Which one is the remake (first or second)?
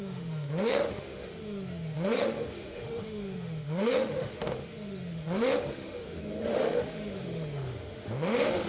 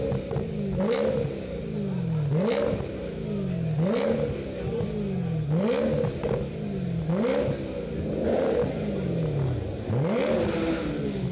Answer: first